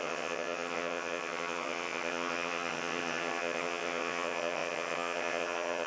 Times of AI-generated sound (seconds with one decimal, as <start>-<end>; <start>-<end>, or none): 0.0-5.9